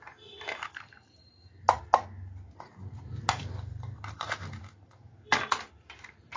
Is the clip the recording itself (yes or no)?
yes